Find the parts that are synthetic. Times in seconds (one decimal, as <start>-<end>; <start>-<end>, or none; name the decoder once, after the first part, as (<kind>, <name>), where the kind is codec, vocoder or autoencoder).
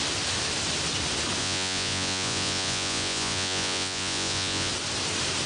1.4-4.7 (vocoder, Vocos)